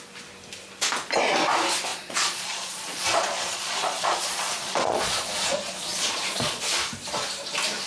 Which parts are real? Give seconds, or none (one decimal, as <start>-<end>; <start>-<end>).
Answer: 0.0-1.9; 6.6-7.9